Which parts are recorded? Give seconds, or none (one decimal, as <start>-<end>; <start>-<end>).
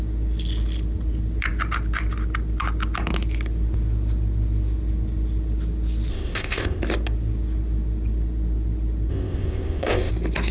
0.0-6.1; 6.8-9.1; 10.1-10.5